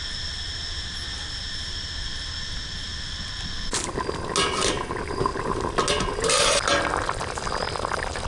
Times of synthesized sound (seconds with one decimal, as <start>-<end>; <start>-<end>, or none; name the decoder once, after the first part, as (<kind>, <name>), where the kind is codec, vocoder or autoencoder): none